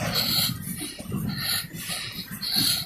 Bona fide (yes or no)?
yes